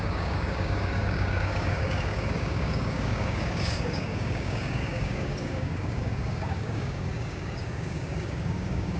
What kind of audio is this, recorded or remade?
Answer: remade